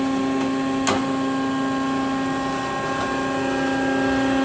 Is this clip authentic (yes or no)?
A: yes